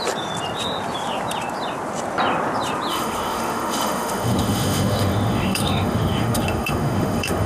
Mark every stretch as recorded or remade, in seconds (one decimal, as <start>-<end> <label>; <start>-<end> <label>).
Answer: 0.0-2.9 recorded; 2.9-7.5 remade